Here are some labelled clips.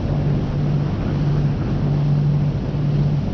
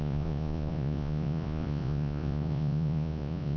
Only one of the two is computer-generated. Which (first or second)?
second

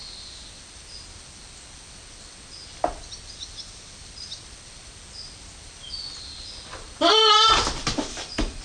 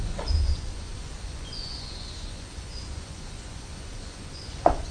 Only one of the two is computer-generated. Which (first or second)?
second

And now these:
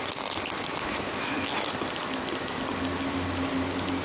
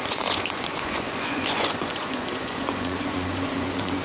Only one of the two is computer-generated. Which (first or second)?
second